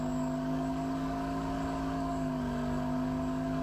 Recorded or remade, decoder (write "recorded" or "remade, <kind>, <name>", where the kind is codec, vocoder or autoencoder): remade, codec, DAC